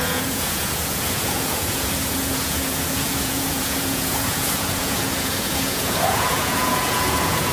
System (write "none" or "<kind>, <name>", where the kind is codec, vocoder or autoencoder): vocoder, Vocos